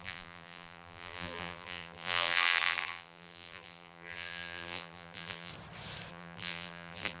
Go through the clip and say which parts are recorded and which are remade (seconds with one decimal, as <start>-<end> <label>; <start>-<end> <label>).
0.0-5.5 remade; 5.5-6.1 recorded; 6.1-7.2 remade